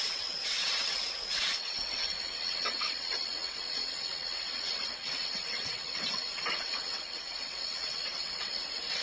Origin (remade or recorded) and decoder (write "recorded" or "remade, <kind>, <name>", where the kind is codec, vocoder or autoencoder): remade, vocoder, WaveNeXt